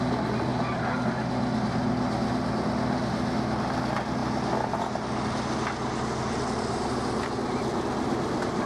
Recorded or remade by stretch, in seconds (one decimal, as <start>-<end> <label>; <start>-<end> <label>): 0.0-8.7 recorded